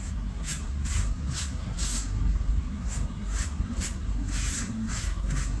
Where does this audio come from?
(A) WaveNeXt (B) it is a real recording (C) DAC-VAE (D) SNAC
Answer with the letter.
D